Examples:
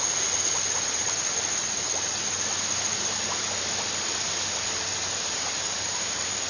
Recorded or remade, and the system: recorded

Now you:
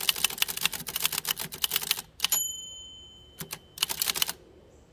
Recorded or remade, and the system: recorded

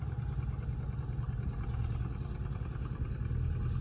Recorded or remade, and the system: recorded